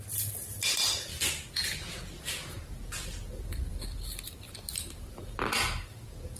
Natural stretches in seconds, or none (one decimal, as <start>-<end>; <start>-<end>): 0.0-6.4